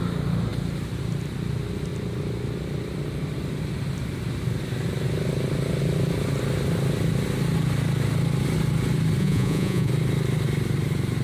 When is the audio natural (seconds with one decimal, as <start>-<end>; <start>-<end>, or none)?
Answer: 0.0-9.2; 9.9-11.2